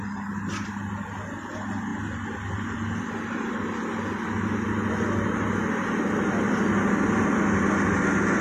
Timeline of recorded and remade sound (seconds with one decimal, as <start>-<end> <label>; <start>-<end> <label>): 0.0-8.4 recorded